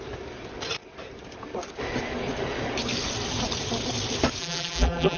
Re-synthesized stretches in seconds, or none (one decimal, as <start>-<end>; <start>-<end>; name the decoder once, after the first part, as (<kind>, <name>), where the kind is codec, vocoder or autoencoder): 4.4-5.2 (vocoder, BigVGAN v2)